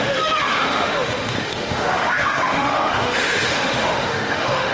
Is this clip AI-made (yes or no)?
yes